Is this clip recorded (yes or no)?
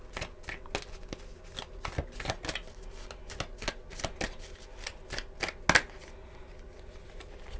yes